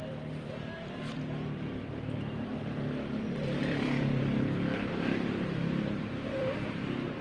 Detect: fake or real fake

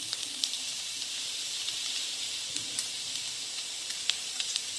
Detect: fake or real fake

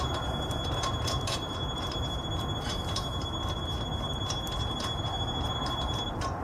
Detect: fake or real fake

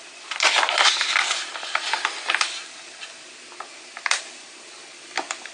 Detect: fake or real real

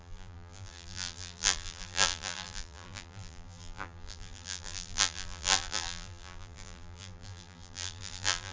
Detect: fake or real fake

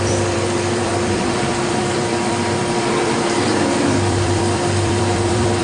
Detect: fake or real fake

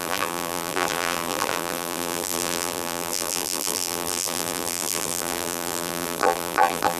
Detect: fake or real fake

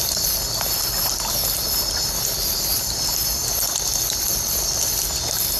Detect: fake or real real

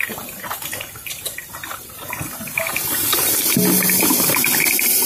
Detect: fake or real real